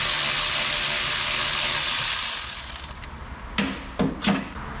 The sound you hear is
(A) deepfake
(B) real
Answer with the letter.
B